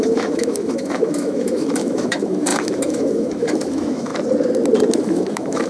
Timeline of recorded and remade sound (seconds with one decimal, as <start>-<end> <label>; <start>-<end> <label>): 0.0-4.1 remade; 4.1-5.0 recorded; 5.0-5.7 remade